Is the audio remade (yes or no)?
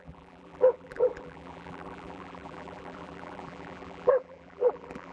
yes